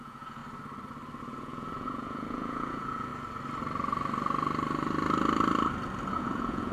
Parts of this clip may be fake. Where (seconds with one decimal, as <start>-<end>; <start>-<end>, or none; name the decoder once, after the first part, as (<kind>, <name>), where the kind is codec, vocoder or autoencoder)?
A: 0.0-0.4 (vocoder, Vocos); 1.2-3.1; 6.1-6.7